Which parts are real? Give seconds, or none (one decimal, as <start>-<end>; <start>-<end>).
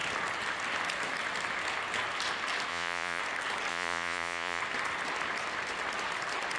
0.0-2.7; 3.2-3.7; 4.6-6.6